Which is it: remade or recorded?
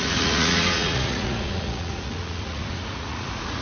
remade